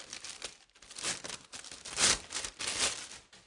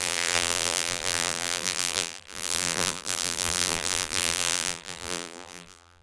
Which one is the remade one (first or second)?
second